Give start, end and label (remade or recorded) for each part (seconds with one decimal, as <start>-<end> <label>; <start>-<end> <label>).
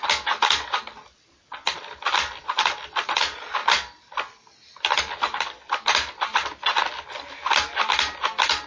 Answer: 0.0-8.7 recorded